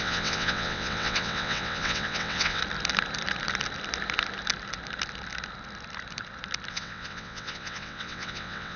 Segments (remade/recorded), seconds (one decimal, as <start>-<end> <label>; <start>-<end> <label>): 0.0-2.6 remade; 2.6-6.7 recorded; 6.7-8.8 remade